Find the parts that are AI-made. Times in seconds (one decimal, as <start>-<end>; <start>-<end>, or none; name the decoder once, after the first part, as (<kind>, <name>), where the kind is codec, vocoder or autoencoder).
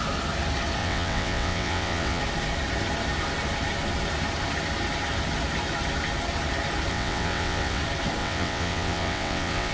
0.8-2.2 (vocoder, WaveNeXt); 6.9-7.8; 8.2-9.7